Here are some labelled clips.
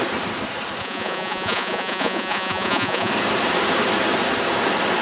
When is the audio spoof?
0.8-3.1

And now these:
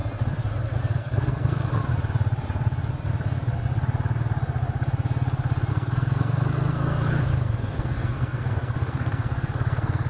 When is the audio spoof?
0.8-1.8; 5.7-10.1

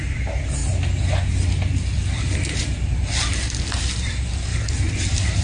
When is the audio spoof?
none

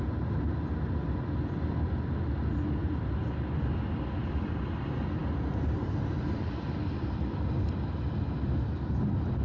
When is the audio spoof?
none

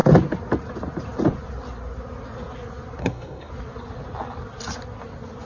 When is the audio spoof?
3.0-3.5

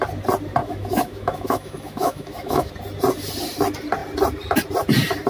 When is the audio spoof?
0.6-2.7

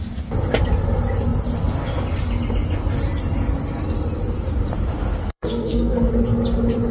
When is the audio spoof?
5.2-6.1